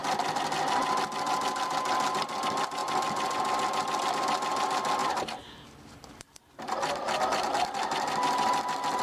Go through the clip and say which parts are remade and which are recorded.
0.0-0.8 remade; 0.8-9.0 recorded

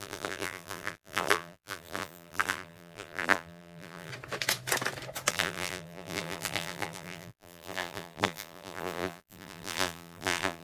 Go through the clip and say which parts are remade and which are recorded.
0.0-4.1 remade; 4.1-5.3 recorded; 5.3-10.6 remade

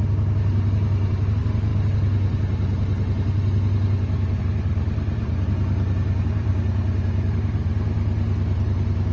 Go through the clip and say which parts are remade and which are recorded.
0.0-5.2 recorded; 5.2-6.5 remade; 6.5-9.1 recorded

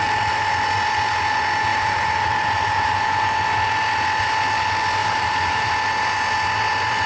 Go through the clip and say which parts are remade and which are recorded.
0.0-1.7 recorded; 1.7-3.0 remade; 3.0-5.0 recorded; 5.0-5.7 remade; 5.7-7.1 recorded